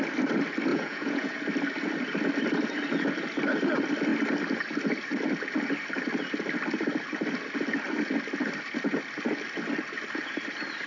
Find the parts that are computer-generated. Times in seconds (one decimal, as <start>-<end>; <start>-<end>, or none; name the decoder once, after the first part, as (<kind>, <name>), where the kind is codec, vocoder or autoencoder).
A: 0.7-1.4 (vocoder, Vocos)